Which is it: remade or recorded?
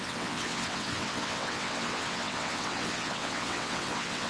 remade